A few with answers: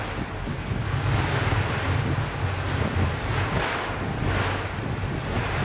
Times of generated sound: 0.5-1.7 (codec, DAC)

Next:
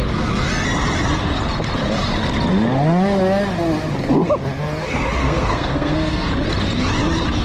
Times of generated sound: 5.2-6.3 (codec, SNAC)

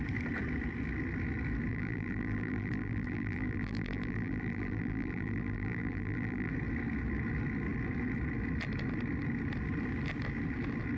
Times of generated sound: 1.7-6.5 (vocoder, BigVGAN v2)

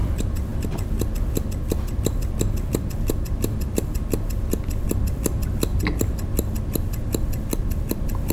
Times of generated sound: none

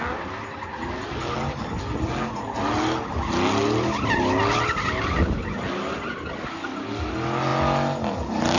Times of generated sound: none

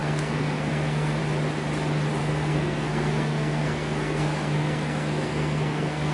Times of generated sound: 0.0-1.2 (codec, SNAC); 2.2-6.1

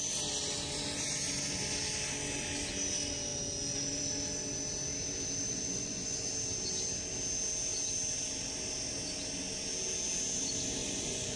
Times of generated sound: 5.5-6.3 (vocoder, Vocos); 10.8-11.4

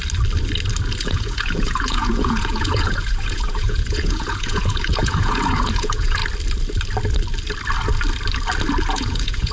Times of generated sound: 1.0-6.2 (vocoder, Vocos); 8.9-9.5